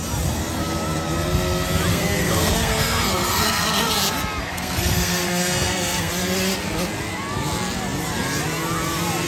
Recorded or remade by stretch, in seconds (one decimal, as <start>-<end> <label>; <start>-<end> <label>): 0.0-1.9 recorded; 1.9-3.9 remade; 3.9-4.4 recorded; 4.4-6.1 remade; 6.1-9.3 recorded